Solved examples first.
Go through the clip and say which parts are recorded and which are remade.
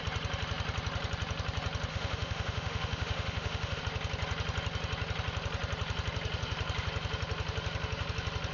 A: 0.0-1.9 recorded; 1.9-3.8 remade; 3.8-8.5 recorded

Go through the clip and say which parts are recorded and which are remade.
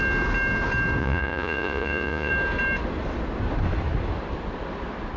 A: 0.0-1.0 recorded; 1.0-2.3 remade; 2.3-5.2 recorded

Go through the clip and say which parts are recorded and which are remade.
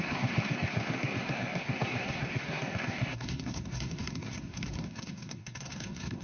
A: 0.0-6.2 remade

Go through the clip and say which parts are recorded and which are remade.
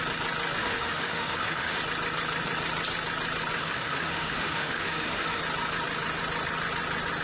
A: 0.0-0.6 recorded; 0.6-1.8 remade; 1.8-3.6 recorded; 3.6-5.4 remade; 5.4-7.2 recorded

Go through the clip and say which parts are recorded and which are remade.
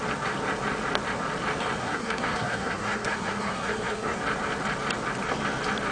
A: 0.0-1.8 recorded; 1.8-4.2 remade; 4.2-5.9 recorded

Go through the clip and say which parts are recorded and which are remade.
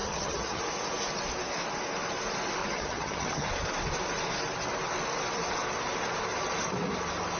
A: 0.0-0.6 remade; 0.6-2.6 recorded; 2.6-3.5 remade; 3.5-7.4 recorded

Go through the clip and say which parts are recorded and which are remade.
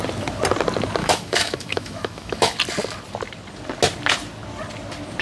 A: 0.0-1.0 recorded; 1.0-2.6 remade; 2.6-5.2 recorded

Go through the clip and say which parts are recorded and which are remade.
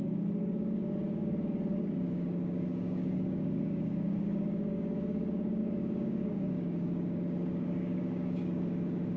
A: 0.0-9.2 remade